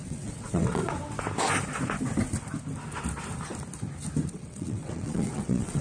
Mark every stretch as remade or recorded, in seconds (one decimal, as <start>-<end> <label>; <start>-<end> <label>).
0.0-0.8 remade; 0.8-4.3 recorded; 4.3-5.8 remade

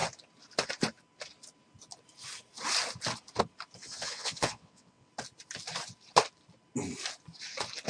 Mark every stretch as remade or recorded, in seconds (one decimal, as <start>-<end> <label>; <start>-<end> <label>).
0.0-3.8 recorded; 3.8-5.1 remade; 5.1-7.9 recorded

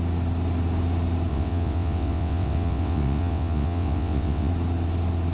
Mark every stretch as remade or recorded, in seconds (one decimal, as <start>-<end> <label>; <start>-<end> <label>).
0.0-1.3 recorded; 1.3-4.5 remade; 4.5-5.3 recorded

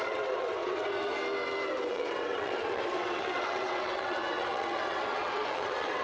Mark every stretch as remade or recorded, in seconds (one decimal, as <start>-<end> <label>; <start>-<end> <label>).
0.0-0.8 remade; 0.8-1.9 recorded; 1.9-6.0 remade

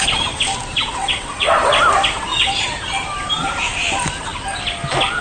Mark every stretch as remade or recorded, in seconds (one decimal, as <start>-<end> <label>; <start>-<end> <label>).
0.0-1.0 recorded; 1.0-1.8 remade; 1.8-5.2 recorded

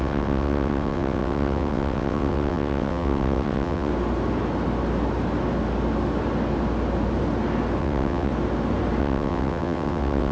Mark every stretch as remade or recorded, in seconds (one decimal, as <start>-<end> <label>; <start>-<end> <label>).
0.0-3.9 remade; 3.9-7.8 recorded; 7.8-8.3 remade; 8.3-9.0 recorded; 9.0-10.3 remade

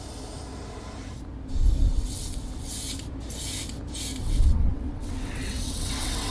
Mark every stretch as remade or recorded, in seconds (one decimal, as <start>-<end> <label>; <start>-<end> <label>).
0.0-1.9 recorded; 1.9-2.7 remade; 2.7-4.2 recorded; 4.2-6.3 remade

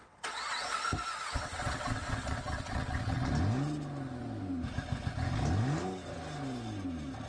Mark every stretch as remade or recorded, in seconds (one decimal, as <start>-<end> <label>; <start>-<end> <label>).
0.0-0.7 remade; 0.7-1.3 recorded; 1.3-3.3 remade; 3.3-7.3 recorded